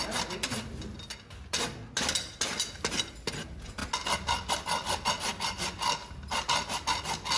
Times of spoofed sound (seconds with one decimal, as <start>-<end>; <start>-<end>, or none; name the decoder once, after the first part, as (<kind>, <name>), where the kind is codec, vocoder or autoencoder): none